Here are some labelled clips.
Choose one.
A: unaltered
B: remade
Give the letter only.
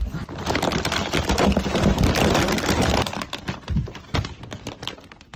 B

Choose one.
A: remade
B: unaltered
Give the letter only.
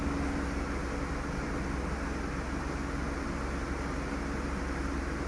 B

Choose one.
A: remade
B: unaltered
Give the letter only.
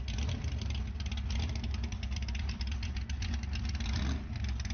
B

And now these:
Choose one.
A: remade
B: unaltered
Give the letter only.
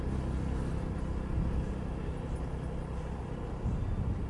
B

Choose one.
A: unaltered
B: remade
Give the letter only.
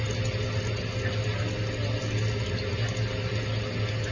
A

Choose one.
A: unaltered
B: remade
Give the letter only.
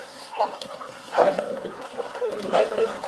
B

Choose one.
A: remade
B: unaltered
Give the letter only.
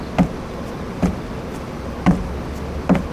B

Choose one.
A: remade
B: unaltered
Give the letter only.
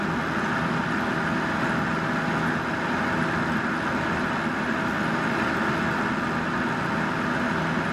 B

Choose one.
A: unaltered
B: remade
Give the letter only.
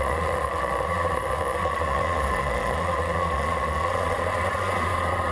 B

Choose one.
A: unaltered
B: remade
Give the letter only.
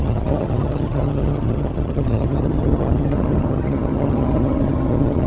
B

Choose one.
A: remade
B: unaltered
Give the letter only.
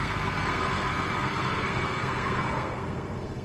A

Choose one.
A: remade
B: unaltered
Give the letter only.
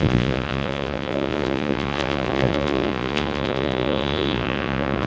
A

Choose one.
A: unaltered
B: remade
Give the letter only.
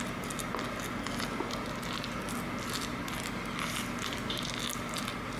A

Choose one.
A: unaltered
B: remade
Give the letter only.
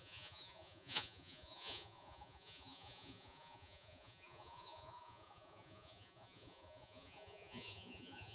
B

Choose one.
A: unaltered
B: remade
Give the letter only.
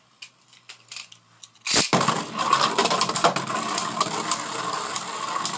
A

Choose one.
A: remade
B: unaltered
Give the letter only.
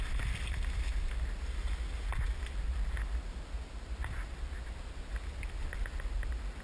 B